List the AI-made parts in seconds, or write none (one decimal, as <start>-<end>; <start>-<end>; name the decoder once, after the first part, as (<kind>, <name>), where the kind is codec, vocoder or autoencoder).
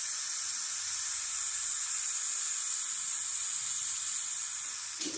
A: none